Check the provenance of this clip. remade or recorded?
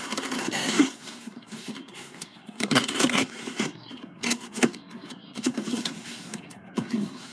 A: remade